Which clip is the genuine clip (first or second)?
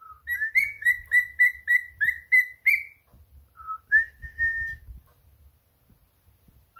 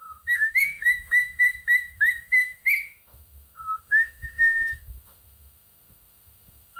first